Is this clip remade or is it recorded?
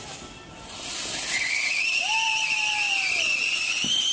recorded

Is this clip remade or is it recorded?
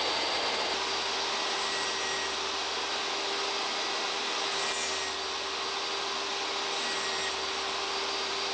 recorded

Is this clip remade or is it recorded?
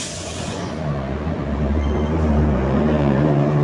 remade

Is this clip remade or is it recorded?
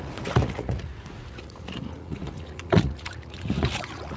remade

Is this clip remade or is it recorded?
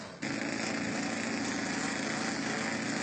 recorded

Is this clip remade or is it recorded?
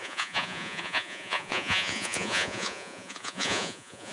remade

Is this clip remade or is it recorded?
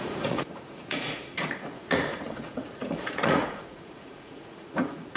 remade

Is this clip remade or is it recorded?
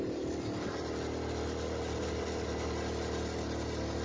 recorded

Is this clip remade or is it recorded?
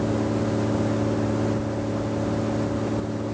recorded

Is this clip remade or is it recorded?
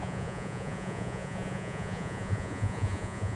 remade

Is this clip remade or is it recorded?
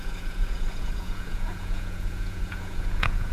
remade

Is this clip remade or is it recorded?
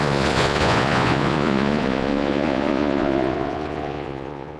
remade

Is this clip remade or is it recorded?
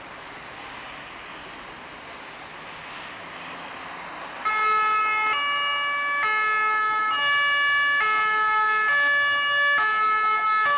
recorded